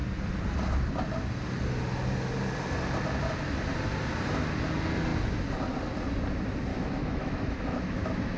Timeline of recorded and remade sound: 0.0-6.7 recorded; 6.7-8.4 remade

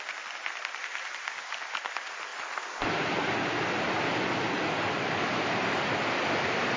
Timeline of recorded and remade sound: 0.0-6.8 recorded

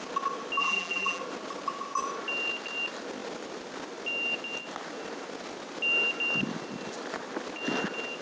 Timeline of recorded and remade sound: 0.0-0.6 recorded; 0.6-1.2 remade; 1.2-8.2 recorded

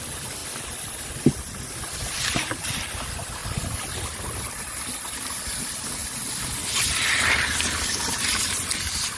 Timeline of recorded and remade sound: 0.0-3.4 remade; 3.4-4.5 recorded; 4.5-9.2 remade

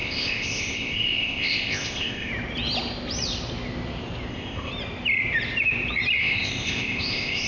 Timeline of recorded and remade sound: 0.0-2.3 remade; 2.3-4.3 recorded; 4.3-4.7 remade; 4.7-6.2 recorded; 6.2-7.5 remade